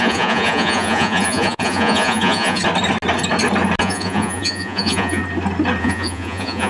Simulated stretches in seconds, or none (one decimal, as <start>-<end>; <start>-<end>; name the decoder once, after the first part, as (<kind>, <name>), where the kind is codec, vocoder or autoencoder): 0.0-2.6 (vocoder, Vocos); 3.8-5.2; 5.8-6.7